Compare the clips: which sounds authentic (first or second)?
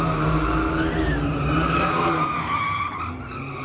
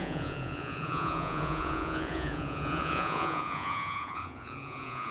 first